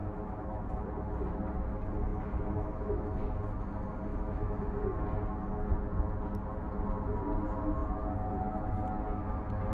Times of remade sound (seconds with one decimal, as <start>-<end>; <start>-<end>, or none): 0.0-0.6; 2.1-3.3; 4.1-4.6